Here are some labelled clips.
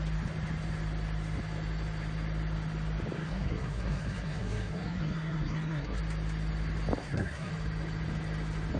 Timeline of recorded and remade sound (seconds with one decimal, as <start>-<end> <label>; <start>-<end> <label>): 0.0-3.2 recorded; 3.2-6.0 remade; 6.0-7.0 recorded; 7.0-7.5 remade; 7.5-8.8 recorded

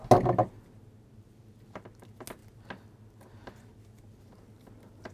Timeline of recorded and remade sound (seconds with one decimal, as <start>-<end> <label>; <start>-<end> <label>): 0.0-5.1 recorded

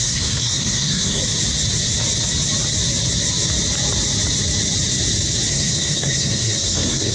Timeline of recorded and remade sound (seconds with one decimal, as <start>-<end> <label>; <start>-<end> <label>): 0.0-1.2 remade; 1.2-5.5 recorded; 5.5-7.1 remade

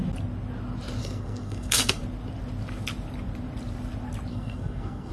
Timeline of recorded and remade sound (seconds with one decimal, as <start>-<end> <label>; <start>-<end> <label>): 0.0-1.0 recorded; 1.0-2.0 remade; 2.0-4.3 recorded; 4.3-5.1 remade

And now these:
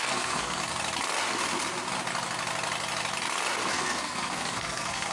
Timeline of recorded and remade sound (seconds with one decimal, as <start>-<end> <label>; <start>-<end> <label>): 0.0-0.6 remade; 0.6-3.7 recorded; 3.7-5.1 remade

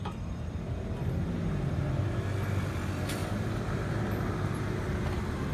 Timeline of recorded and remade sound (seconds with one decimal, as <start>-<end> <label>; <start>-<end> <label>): 0.0-5.5 recorded

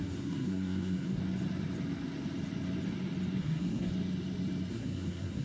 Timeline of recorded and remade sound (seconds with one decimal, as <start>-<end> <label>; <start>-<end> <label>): 0.0-1.2 remade; 1.2-3.4 recorded; 3.4-3.9 remade; 3.9-4.7 recorded; 4.7-5.4 remade